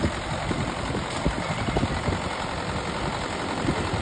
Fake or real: fake